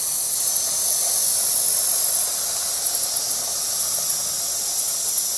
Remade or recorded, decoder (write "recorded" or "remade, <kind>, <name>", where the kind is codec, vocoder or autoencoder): recorded